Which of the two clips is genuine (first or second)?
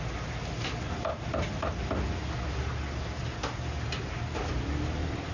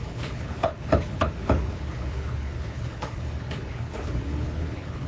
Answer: first